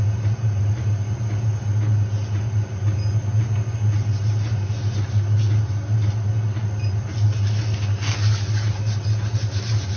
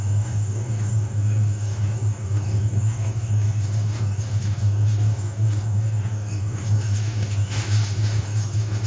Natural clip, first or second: first